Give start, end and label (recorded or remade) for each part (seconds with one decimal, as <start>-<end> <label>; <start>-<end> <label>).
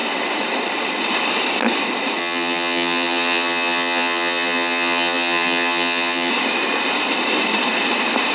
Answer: 0.0-2.2 recorded; 2.2-6.3 remade; 6.3-8.3 recorded